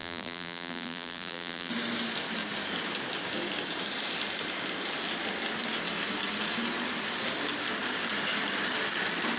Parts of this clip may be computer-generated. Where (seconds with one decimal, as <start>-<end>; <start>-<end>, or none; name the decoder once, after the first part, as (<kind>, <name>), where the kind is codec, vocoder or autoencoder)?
0.0-1.7 (vocoder, BigVGAN v2)